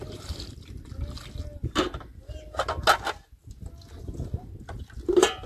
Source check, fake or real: real